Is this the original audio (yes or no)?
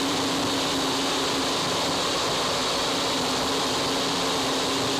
yes